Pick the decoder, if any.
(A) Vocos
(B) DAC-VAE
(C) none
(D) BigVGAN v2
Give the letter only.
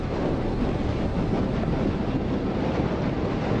C